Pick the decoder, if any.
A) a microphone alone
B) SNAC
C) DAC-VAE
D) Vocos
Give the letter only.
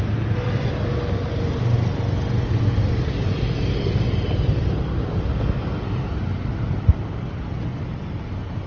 A